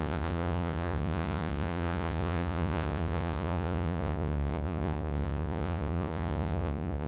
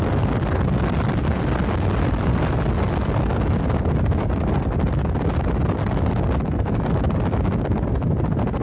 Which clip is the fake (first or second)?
first